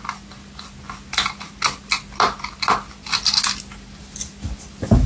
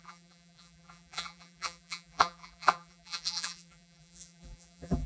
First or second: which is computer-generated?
second